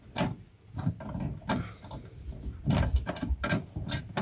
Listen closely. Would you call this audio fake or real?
real